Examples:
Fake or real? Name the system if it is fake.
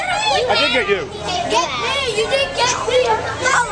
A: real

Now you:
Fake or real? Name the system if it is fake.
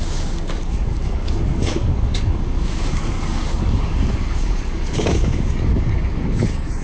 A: fake, codec, DAC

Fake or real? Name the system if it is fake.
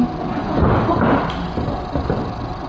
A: real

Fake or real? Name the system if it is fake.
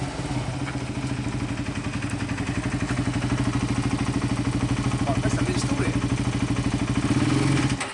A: real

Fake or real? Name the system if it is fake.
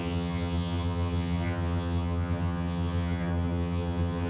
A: fake, vocoder, HiFi-GAN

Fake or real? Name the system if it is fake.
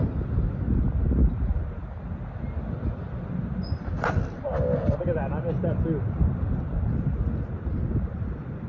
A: real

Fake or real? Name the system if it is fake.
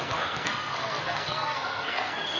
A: fake, codec, SNAC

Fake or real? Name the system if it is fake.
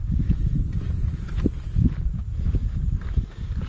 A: fake, vocoder, BigVGAN v2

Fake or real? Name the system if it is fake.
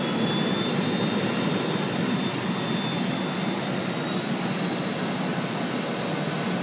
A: real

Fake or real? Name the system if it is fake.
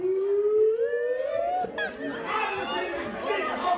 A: real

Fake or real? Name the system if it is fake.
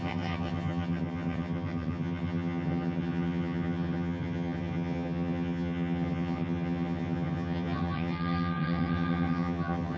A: fake, vocoder, HiFi-GAN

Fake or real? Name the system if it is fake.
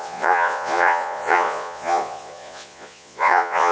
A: fake, vocoder, Vocos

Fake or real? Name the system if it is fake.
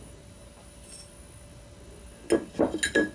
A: real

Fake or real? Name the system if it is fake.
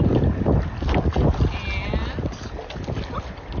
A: real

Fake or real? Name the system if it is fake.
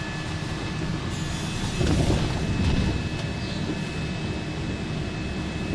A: real